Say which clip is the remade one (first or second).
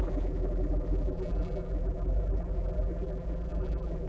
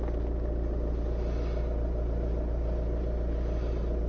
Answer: first